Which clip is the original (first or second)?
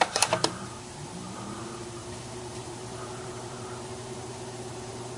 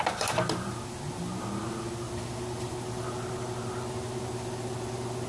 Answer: second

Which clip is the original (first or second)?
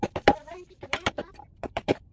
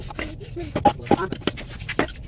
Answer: second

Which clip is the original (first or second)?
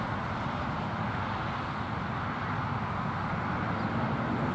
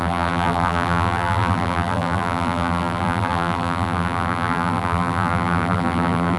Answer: first